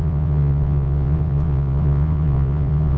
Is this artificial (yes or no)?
yes